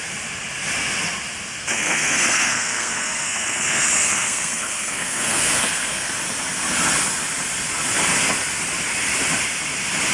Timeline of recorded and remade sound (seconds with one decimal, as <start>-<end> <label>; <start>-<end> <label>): 0.0-1.6 recorded; 1.6-6.1 remade; 6.1-10.1 recorded